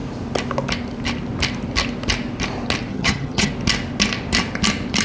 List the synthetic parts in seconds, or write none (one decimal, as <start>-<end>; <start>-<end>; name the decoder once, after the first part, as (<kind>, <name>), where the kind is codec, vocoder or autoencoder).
2.9-3.5 (vocoder, HiFi-GAN)